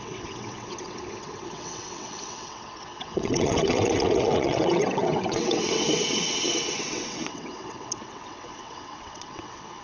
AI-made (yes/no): yes